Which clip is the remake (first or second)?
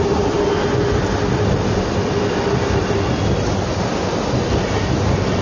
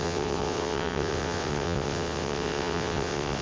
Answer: second